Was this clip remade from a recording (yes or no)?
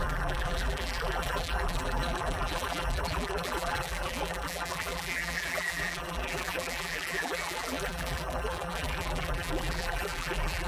yes